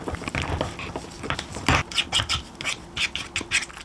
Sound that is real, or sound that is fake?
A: real